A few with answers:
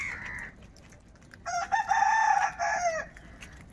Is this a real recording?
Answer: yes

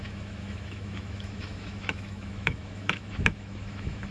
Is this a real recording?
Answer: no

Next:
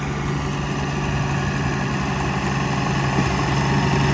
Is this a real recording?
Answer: yes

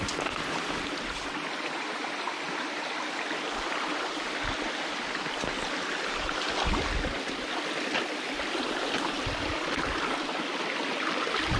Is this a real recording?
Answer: yes